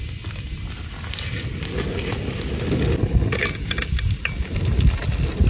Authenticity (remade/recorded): recorded